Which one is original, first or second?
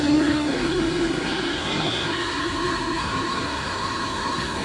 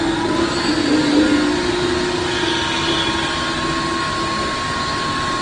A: second